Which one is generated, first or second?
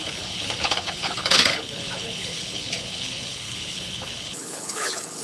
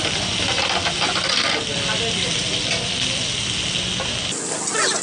first